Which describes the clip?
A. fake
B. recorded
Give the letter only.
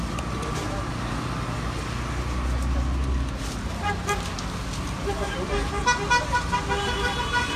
B